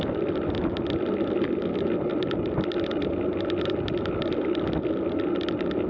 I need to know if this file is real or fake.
real